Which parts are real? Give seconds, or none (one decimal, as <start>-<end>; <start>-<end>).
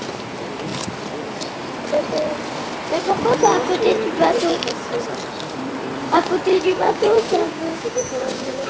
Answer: 0.0-6.5